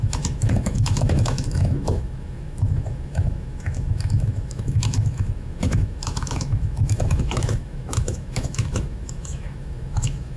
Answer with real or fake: fake